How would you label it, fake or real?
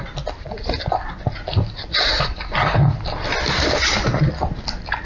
real